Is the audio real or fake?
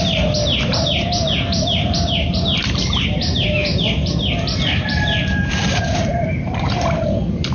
fake